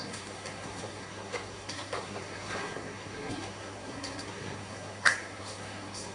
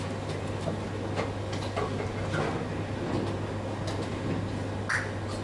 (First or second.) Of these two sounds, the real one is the second